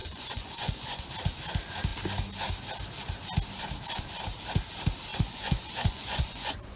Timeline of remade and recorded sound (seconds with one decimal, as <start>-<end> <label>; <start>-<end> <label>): 0.0-1.0 remade; 1.0-5.1 recorded; 5.1-6.8 remade